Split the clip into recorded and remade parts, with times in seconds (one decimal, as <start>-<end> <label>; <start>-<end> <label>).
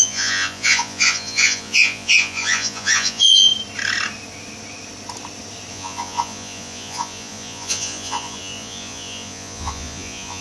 0.0-3.5 remade; 3.5-5.7 recorded; 5.7-10.4 remade